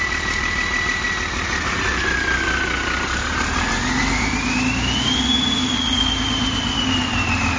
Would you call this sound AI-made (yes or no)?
no